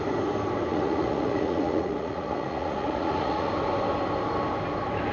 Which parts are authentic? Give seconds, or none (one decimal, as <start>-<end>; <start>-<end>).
0.0-0.7; 3.5-5.1